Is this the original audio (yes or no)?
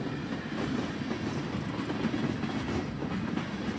yes